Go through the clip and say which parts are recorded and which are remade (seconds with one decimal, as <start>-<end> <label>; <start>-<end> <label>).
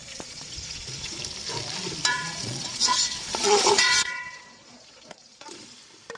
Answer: 0.0-1.2 remade; 1.2-2.1 recorded; 2.1-5.8 remade; 5.8-6.2 recorded